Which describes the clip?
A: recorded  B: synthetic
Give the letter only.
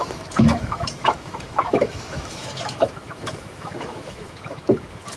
B